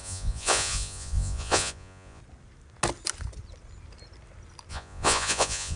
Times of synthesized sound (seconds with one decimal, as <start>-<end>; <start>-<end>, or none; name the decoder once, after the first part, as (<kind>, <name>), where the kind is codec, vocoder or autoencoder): 0.0-2.2 (vocoder, Vocos); 4.7-5.8